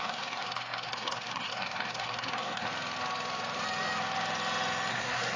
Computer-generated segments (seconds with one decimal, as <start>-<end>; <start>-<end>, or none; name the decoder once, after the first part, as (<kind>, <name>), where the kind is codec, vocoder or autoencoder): 0.0-2.7 (codec, SNAC); 4.9-5.4